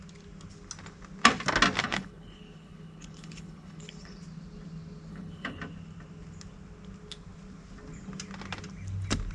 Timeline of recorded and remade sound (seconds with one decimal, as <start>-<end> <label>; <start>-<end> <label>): 0.0-1.8 recorded; 1.8-4.2 remade; 4.2-5.1 recorded; 5.1-5.6 remade; 5.6-9.3 recorded